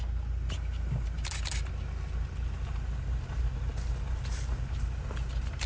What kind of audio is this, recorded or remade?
recorded